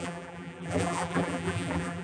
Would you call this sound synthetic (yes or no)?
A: yes